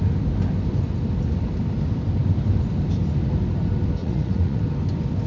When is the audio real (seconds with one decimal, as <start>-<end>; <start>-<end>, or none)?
0.0-4.0; 4.6-5.3